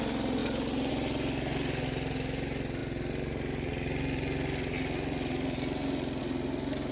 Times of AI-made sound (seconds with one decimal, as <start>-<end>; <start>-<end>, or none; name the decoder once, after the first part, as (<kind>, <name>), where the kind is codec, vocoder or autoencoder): none